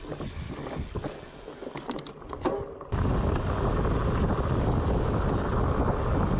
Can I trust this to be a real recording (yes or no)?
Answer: yes